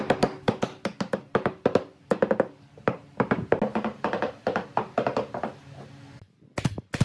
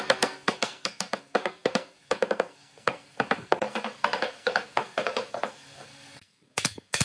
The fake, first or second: second